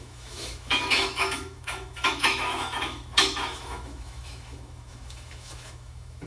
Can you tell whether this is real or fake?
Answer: fake